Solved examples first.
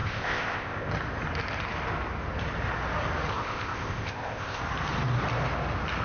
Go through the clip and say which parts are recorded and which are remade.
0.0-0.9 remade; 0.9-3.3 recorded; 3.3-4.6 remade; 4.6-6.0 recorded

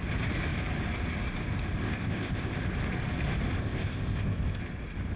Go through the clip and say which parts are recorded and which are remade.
0.0-1.8 recorded; 1.8-2.5 remade; 2.5-3.6 recorded; 3.6-4.6 remade; 4.6-5.2 recorded

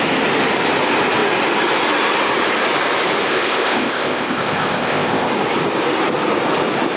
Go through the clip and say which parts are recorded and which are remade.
0.0-3.3 recorded; 3.3-5.3 remade; 5.3-7.0 recorded

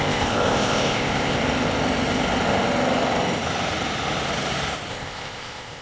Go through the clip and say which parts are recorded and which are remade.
0.0-1.4 remade; 1.4-4.9 recorded; 4.9-5.8 remade

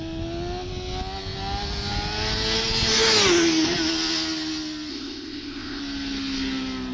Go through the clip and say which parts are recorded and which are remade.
0.0-4.9 recorded; 4.9-5.8 remade; 5.8-6.9 recorded

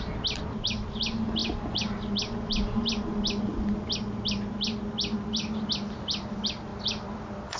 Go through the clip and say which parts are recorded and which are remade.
0.0-7.6 recorded